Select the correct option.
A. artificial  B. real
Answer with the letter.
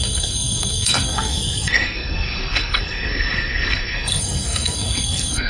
A